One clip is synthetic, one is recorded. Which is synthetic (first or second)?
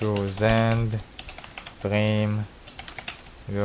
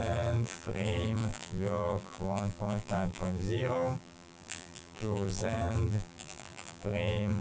second